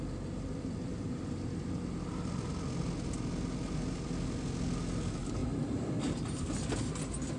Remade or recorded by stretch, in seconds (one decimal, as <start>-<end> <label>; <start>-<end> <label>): 0.0-7.4 recorded